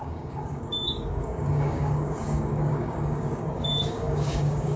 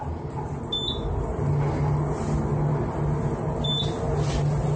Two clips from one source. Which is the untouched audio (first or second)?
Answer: second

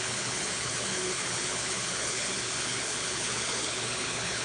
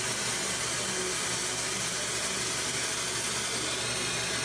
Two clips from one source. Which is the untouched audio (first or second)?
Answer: second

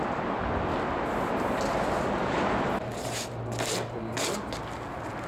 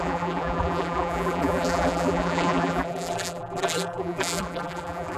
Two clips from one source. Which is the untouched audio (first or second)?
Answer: first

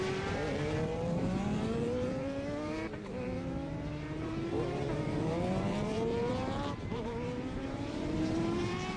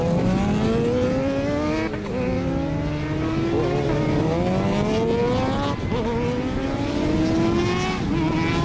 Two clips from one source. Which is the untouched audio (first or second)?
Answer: second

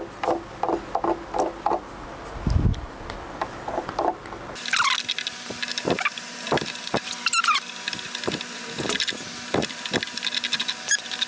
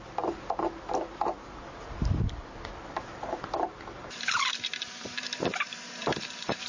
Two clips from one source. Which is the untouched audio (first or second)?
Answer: first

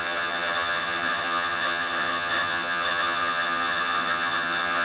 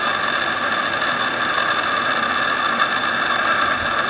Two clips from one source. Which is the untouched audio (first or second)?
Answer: second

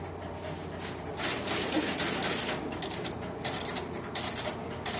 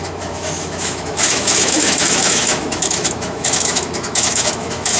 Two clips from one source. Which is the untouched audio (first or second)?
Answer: first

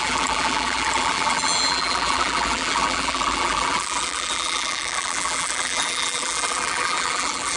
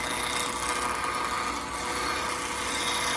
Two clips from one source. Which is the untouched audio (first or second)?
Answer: second